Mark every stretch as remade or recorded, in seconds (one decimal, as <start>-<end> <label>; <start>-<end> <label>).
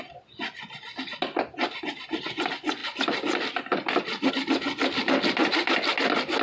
0.0-6.4 recorded